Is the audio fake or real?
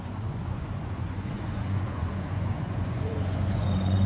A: fake